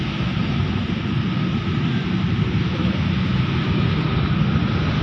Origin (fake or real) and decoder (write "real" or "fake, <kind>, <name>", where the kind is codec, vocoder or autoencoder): real